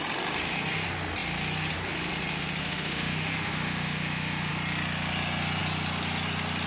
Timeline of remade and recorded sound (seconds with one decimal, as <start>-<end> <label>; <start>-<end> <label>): 0.0-2.6 recorded; 2.6-4.5 remade; 4.5-6.7 recorded